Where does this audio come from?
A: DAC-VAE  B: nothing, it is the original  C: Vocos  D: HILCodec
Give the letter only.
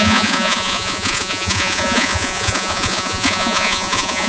C